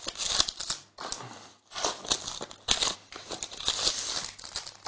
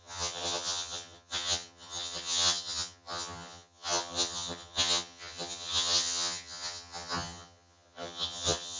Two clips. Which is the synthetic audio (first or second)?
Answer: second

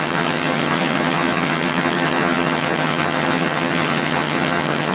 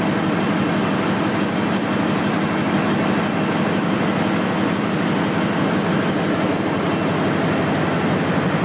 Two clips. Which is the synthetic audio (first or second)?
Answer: first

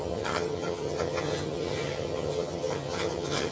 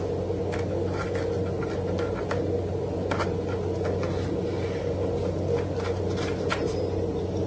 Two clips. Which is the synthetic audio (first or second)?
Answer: first